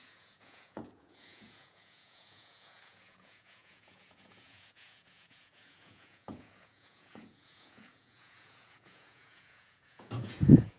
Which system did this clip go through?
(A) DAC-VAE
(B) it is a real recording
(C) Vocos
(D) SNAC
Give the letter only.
C